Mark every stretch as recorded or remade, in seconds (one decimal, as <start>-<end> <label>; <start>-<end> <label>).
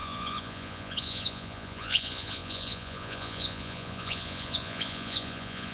0.0-5.7 remade